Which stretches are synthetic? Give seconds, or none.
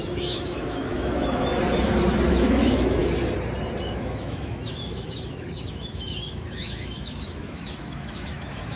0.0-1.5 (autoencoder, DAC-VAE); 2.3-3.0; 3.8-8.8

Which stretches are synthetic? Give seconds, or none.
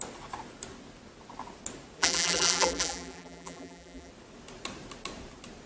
2.0-4.1 (vocoder, BigVGAN v2)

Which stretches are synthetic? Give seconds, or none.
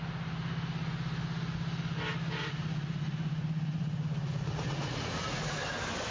2.4-5.6 (vocoder, Vocos)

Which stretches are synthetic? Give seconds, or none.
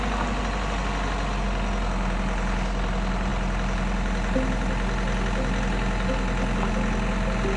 none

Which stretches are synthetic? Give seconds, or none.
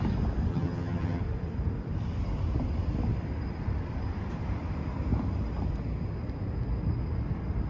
0.5-1.2 (vocoder, HiFi-GAN)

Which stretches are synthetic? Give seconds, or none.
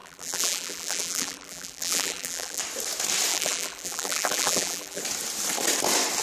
0.0-2.6 (vocoder, BigVGAN v2); 3.3-5.0